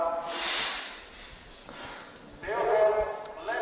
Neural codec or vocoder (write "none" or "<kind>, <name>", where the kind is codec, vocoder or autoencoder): none